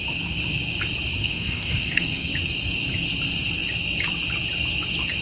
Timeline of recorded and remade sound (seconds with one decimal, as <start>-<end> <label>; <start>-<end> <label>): 0.0-1.2 recorded; 1.2-2.3 remade; 2.3-5.2 recorded